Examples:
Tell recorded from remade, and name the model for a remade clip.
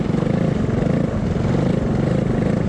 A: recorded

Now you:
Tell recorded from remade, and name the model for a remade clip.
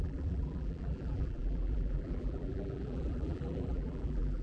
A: remade, vocoder, BigVGAN v2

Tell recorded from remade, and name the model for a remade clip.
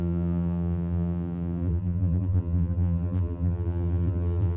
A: remade, vocoder, BigVGAN v2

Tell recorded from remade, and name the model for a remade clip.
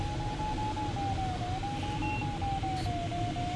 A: recorded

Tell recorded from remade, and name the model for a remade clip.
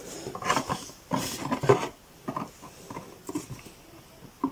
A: recorded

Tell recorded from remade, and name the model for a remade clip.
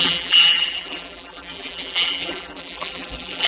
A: remade, vocoder, BigVGAN v2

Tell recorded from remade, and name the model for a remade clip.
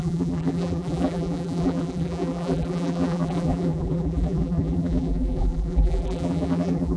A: remade, vocoder, BigVGAN v2